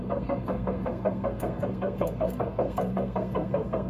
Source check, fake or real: fake